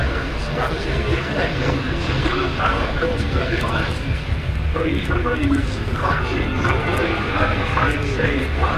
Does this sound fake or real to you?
fake